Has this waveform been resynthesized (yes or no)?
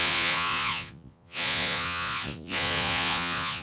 yes